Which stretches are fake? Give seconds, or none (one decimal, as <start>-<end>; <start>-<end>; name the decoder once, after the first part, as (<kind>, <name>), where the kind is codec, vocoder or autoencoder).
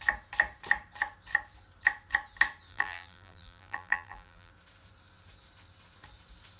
2.7-4.5 (vocoder, BigVGAN v2)